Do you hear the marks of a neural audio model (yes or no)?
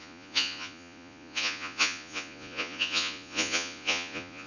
yes